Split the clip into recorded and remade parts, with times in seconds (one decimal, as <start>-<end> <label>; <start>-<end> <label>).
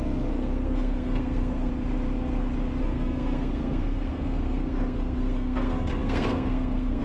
0.0-1.7 remade; 1.7-2.8 recorded; 2.8-7.0 remade